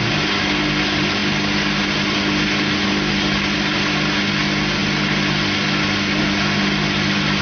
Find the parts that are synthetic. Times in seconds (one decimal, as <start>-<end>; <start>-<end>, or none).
none